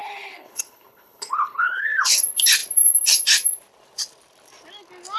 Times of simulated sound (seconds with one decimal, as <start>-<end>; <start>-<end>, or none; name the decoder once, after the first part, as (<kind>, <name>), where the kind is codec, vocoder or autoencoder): 0.0-2.2 (codec, HILCodec)